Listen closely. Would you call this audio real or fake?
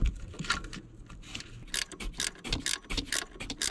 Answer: real